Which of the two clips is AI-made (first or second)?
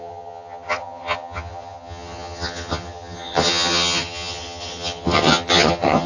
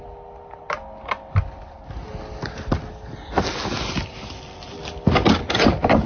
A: first